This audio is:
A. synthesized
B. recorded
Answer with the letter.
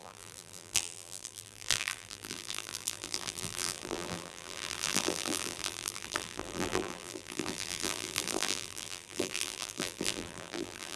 A